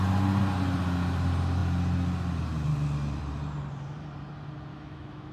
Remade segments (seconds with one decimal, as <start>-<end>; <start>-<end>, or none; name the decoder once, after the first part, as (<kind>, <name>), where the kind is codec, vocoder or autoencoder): 4.7-5.3 (autoencoder, DAC-VAE)